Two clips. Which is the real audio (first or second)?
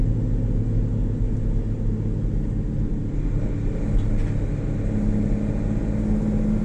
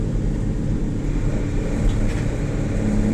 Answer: first